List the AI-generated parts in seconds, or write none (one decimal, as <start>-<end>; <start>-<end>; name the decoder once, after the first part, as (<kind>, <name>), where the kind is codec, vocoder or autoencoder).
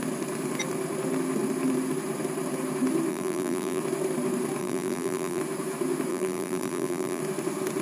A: 3.1-3.8 (vocoder, BigVGAN v2); 4.6-5.4; 6.1-7.2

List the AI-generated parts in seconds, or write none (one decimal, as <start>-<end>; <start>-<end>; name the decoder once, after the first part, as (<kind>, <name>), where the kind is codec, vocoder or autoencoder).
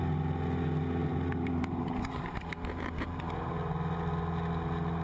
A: 1.0-3.2 (vocoder, BigVGAN v2)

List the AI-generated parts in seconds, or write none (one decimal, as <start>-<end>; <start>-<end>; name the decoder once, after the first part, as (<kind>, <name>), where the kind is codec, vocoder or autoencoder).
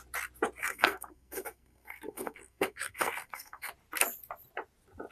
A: 0.6-3.7 (codec, SNAC)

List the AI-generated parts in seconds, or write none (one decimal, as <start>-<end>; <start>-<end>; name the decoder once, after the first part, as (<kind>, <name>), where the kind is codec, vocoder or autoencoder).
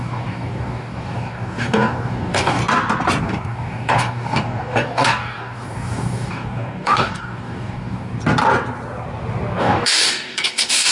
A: 0.0-2.6 (codec, DAC); 3.2-8.1; 9.6-10.9